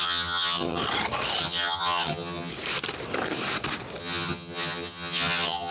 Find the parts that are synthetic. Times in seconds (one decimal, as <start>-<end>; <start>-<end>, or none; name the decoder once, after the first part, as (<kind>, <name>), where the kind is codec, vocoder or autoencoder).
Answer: 0.0-0.8 (vocoder, HiFi-GAN); 1.4-2.5; 4.0-5.7